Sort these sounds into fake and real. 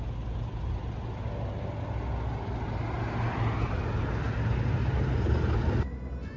real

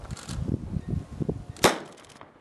real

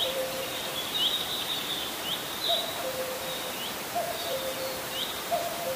fake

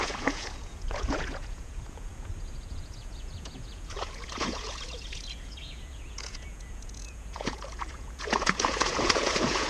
fake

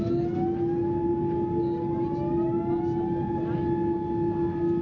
real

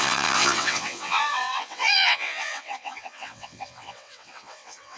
fake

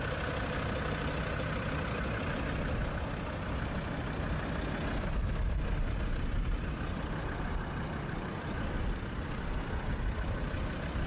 real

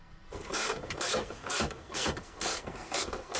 fake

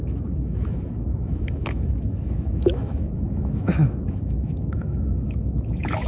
fake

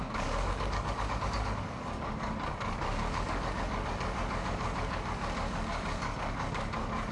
fake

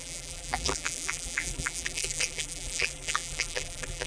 fake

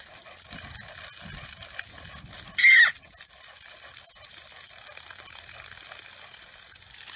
real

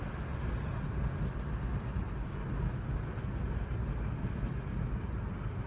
real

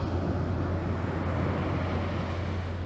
real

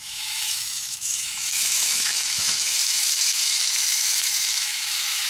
fake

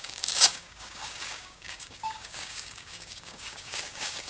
fake